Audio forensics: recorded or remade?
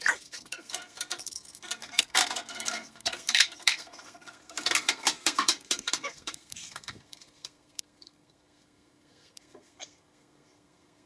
remade